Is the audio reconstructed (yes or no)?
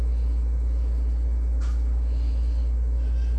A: no